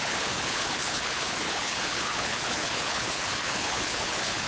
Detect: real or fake fake